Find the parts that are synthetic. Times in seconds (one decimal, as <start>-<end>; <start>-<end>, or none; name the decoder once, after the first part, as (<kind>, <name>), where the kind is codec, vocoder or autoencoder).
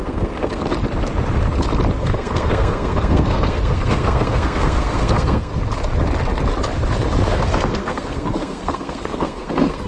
0.0-0.6 (codec, SNAC); 2.0-5.5; 7.3-9.9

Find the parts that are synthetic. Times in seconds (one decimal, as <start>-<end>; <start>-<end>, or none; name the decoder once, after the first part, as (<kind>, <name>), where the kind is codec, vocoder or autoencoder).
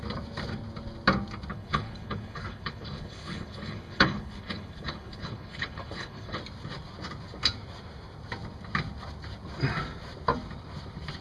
1.5-6.4 (codec, HILCodec)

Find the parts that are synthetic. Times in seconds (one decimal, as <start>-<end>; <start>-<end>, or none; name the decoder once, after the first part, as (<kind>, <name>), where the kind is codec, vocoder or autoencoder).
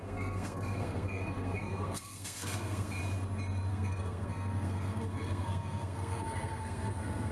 0.0-3.0 (codec, SNAC); 3.7-7.3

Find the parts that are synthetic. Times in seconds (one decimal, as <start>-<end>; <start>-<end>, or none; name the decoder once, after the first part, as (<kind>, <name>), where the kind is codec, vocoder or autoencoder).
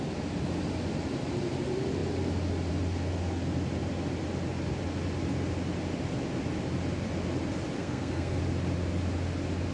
7.8-8.4 (codec, SNAC)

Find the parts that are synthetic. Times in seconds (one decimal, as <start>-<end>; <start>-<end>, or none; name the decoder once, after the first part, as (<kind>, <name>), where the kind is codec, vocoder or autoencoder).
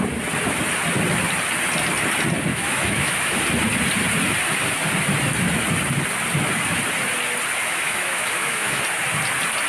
2.5-3.4 (autoencoder, DAC-VAE); 7.6-8.8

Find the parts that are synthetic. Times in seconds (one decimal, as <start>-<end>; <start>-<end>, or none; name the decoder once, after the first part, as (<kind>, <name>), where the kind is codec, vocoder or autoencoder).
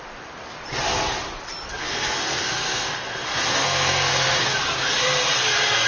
1.8-4.4 (codec, SNAC)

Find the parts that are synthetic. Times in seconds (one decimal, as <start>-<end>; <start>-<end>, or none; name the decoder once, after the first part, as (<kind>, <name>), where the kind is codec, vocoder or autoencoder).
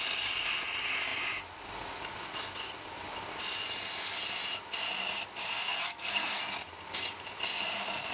5.6-6.4 (codec, SNAC)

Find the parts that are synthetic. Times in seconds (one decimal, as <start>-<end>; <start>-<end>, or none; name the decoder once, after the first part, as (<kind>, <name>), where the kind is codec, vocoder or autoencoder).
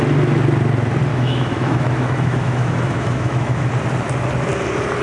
1.1-3.7 (autoencoder, DAC-VAE)